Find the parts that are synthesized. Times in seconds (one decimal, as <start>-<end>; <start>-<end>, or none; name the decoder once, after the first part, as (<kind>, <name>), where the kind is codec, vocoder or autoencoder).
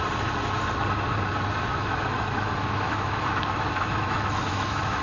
1.7-5.0 (autoencoder, DAC-VAE)